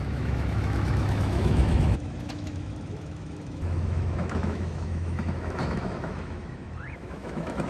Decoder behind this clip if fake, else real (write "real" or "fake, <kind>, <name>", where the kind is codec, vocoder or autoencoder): fake, autoencoder, DAC-VAE